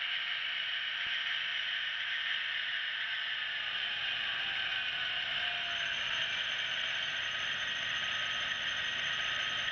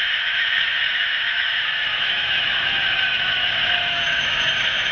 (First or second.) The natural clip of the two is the first